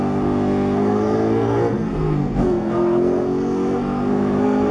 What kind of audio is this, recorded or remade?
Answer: remade